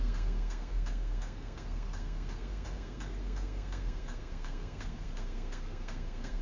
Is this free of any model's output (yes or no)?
no